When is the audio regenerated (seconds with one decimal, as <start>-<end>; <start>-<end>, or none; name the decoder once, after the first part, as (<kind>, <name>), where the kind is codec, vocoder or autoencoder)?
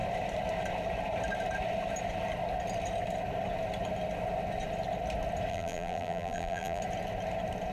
5.5-6.8 (vocoder, BigVGAN v2)